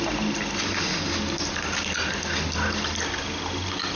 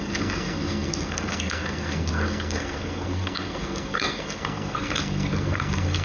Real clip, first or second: first